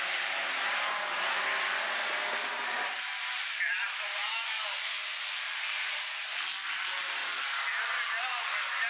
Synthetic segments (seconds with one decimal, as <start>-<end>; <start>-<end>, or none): 0.0-1.4; 2.5-7.2; 8.2-8.9